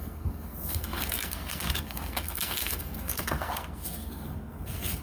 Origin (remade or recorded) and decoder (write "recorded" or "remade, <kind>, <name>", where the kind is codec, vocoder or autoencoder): remade, codec, SNAC